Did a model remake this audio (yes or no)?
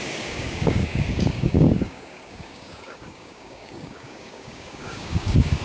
yes